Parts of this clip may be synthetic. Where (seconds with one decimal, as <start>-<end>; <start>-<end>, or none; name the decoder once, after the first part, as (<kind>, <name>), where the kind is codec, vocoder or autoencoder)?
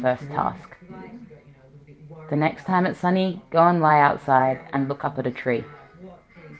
4.4-4.9 (codec, SNAC)